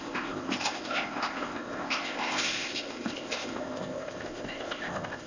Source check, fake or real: fake